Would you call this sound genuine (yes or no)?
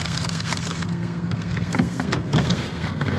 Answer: no